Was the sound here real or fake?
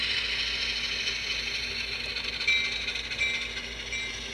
real